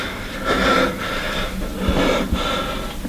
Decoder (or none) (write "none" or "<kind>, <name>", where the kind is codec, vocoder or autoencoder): none